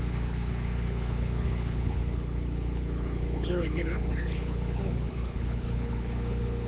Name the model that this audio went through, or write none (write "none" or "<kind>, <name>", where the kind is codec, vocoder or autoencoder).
codec, HILCodec